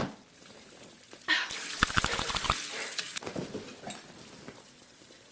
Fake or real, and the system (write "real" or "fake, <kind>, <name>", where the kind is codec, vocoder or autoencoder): real